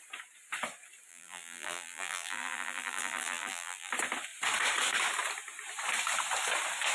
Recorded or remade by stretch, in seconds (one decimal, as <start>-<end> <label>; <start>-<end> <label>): 0.0-1.1 recorded; 1.1-3.9 remade; 3.9-6.9 recorded